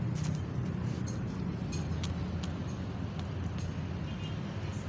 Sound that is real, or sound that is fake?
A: real